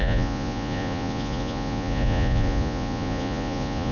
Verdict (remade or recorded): remade